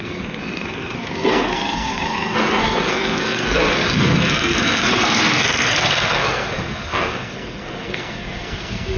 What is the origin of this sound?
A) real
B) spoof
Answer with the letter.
B